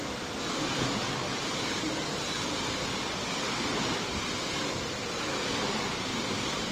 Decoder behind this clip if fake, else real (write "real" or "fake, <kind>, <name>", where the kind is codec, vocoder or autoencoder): fake, vocoder, BigVGAN v2